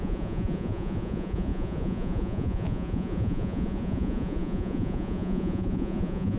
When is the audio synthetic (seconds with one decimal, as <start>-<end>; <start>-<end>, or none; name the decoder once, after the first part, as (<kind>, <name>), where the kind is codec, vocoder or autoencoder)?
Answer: 0.0-6.4 (vocoder, Vocos)